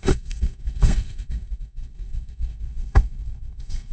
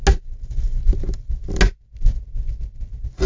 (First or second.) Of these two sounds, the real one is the second